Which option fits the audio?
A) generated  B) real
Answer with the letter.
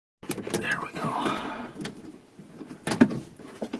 B